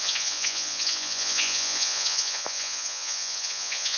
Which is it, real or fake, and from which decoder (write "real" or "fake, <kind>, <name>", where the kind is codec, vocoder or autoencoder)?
fake, vocoder, Vocos